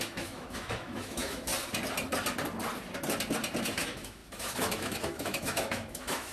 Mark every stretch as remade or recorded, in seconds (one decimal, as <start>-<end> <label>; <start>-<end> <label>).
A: 0.0-1.5 remade; 1.5-3.6 recorded; 3.6-6.3 remade